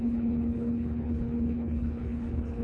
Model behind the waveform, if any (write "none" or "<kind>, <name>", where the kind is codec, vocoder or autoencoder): codec, HILCodec